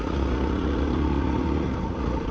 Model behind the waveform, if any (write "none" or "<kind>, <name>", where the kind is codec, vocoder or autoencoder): vocoder, Vocos